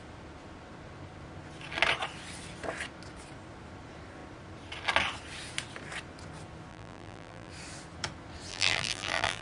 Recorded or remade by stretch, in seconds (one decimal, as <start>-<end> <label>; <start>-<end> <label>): 0.0-6.7 recorded; 6.7-7.5 remade; 7.5-8.5 recorded; 8.5-9.4 remade